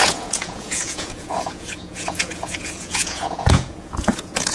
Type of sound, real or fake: fake